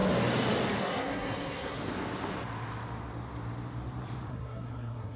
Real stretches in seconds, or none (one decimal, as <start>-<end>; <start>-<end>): 0.0-0.8; 1.8-4.3